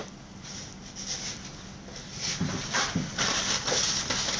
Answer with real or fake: real